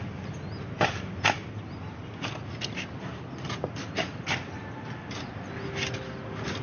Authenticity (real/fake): real